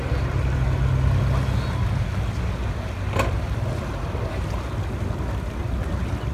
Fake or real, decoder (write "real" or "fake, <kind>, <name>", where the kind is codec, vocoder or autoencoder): real